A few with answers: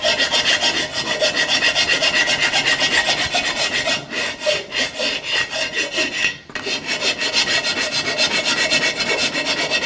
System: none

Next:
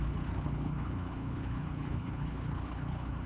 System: codec, HILCodec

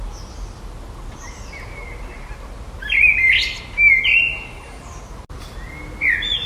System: none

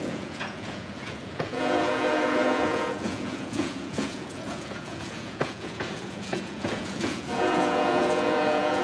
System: vocoder, Vocos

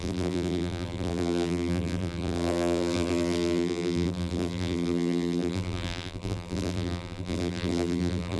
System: vocoder, BigVGAN v2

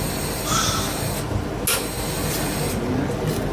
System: none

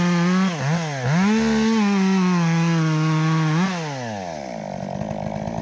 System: none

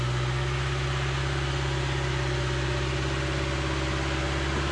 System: none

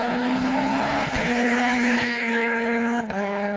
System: codec, HILCodec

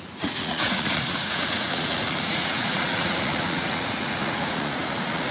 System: vocoder, Vocos